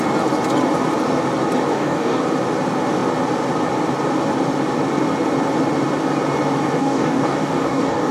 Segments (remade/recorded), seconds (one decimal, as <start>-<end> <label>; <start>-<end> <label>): 0.0-1.7 recorded; 1.7-2.2 remade; 2.2-6.8 recorded; 6.8-8.1 remade